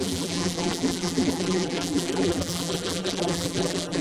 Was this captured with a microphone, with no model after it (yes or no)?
no